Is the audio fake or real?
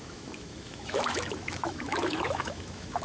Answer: fake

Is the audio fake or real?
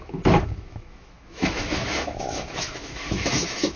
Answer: fake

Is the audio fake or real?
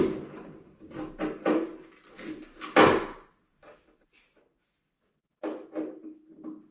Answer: real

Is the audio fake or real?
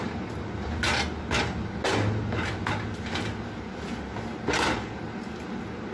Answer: real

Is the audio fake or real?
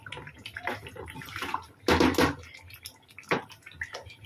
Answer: real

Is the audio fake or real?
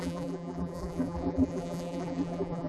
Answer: fake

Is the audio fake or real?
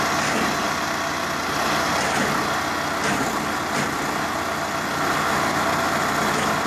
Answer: real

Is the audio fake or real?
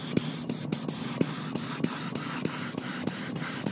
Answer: real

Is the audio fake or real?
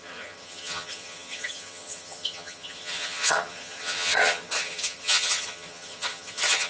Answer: fake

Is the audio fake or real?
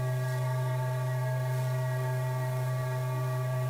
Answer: fake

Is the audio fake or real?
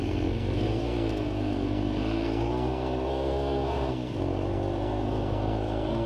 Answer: fake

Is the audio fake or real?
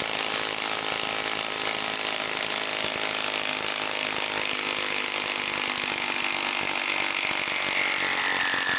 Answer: real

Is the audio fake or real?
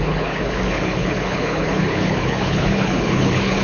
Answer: fake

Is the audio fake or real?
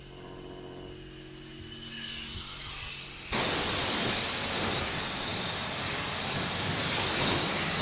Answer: real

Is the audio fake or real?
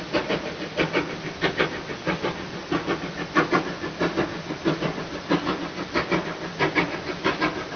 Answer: real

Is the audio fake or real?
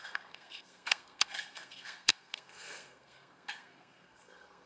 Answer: fake